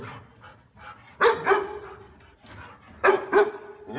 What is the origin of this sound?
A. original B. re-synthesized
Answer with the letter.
A